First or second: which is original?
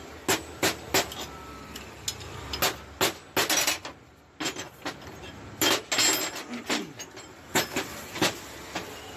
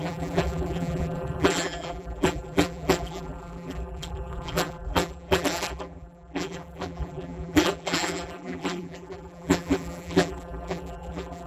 first